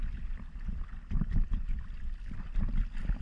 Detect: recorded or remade recorded